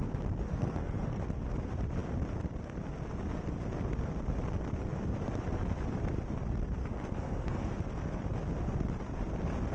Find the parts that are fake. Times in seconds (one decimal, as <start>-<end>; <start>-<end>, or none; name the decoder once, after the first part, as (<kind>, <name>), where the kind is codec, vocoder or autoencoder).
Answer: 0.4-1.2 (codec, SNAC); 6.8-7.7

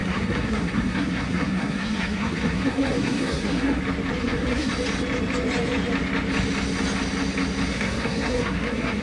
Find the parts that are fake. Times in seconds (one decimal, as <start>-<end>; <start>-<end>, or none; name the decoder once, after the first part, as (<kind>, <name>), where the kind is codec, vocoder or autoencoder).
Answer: 0.0-3.8 (codec, SNAC); 4.2-4.7; 7.7-9.0

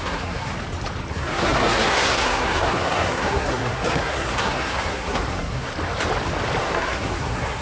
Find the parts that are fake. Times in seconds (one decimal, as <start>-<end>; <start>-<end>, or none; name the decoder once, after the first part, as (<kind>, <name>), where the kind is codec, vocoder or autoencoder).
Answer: 0.0-0.5 (codec, SNAC); 1.1-5.7; 6.6-7.6

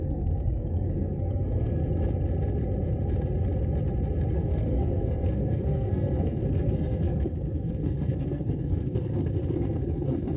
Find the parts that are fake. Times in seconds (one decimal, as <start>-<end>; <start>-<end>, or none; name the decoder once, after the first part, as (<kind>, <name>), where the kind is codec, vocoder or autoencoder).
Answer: 0.0-1.8 (codec, SNAC); 4.3-10.4

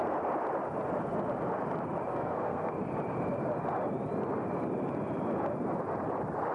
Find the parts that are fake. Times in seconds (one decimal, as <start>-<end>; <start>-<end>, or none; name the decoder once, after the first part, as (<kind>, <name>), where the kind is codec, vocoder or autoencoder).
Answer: 2.1-2.7 (codec, SNAC)

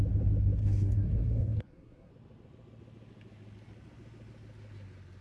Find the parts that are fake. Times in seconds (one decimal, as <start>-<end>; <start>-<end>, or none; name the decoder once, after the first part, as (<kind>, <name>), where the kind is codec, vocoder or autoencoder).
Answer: 0.6-2.1 (codec, SNAC)

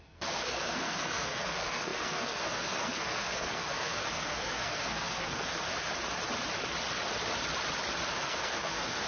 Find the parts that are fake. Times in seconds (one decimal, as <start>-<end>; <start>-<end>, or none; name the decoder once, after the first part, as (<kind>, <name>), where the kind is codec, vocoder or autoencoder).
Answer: 0.0-5.7 (codec, SNAC); 8.1-9.1